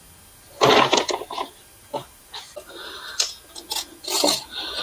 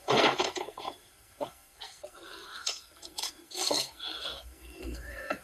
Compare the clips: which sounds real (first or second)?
first